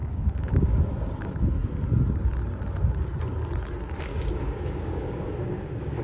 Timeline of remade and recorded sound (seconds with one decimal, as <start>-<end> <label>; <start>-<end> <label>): 0.0-0.8 remade; 0.8-4.1 recorded; 4.1-6.0 remade

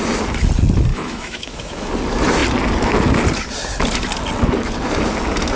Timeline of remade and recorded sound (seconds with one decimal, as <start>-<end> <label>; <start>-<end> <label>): 0.0-0.9 recorded; 0.9-1.9 remade; 1.9-5.6 recorded

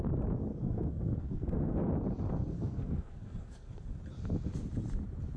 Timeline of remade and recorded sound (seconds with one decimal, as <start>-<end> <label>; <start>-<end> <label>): 0.0-0.5 recorded; 0.5-1.8 remade; 1.8-2.3 recorded; 2.3-4.0 remade; 4.0-5.4 recorded

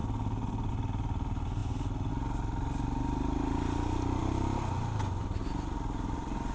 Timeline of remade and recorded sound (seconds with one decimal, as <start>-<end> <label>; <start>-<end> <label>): 0.0-6.5 recorded

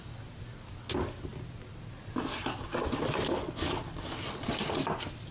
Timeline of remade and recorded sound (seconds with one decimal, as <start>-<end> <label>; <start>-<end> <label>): 0.0-5.3 recorded